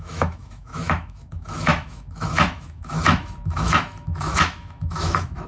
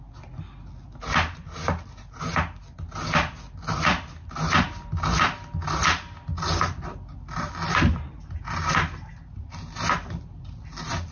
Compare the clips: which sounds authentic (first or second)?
second